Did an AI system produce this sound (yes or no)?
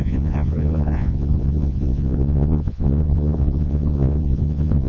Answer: yes